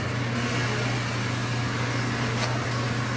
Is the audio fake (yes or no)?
no